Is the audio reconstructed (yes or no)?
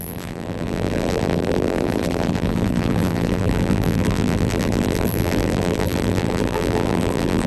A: yes